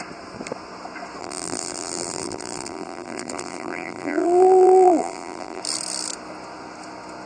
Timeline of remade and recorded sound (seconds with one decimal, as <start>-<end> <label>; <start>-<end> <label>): 0.0-1.2 recorded; 1.2-5.6 remade; 5.6-7.3 recorded